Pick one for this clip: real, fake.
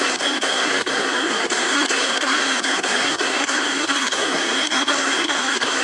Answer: fake